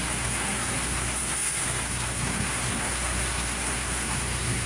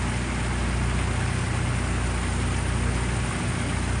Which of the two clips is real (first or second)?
second